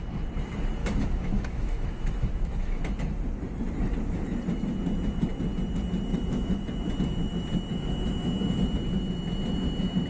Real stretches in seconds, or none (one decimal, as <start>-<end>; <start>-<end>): 0.0-0.8; 2.8-6.1; 6.9-7.7; 8.6-10.1